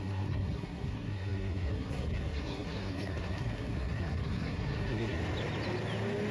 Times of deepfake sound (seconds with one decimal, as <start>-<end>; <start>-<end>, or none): 0.0-5.2